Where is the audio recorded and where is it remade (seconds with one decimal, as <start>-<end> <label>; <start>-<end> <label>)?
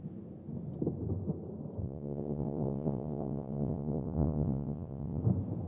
0.0-1.8 recorded; 1.8-5.2 remade; 5.2-5.7 recorded